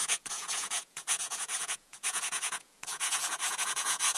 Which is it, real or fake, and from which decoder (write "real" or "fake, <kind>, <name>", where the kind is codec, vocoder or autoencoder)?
fake, vocoder, Vocos